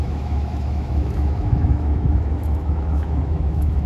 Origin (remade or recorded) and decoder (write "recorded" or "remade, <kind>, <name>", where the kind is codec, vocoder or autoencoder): remade, autoencoder, DAC-VAE